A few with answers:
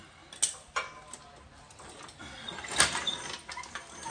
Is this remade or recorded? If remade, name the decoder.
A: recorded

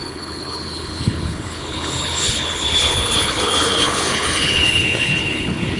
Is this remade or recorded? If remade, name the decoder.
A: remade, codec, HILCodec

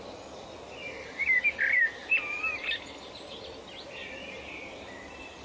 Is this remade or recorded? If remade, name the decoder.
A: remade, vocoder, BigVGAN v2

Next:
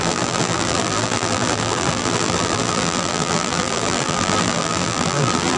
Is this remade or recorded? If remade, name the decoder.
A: remade, vocoder, BigVGAN v2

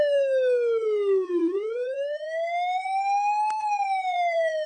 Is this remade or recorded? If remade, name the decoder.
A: remade, autoencoder, DAC-VAE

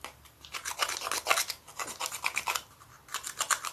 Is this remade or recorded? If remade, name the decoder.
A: recorded